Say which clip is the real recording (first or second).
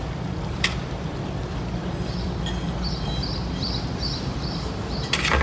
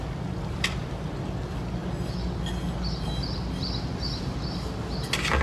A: second